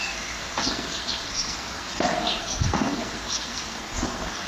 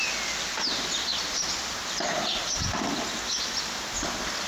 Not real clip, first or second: first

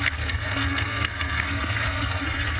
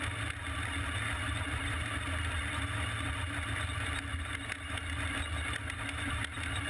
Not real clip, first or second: first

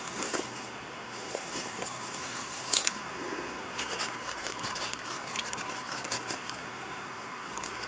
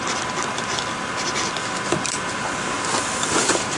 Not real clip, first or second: first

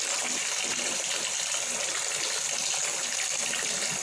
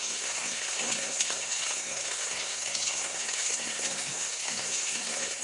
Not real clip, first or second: second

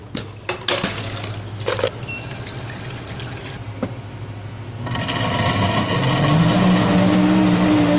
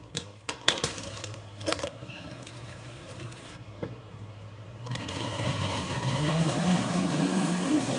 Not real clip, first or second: second